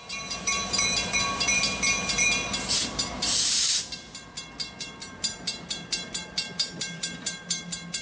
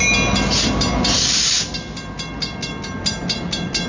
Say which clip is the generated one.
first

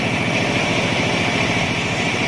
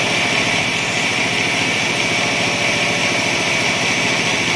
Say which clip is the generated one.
first